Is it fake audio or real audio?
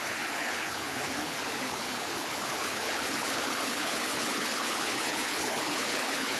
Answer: fake